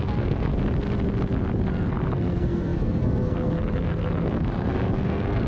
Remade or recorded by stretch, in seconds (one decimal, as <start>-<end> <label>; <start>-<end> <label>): 0.0-0.5 remade; 0.5-1.7 recorded; 1.7-5.5 remade